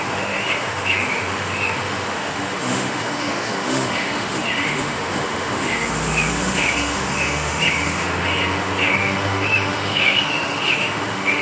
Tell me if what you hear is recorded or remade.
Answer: remade